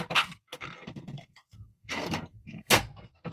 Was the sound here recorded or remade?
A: remade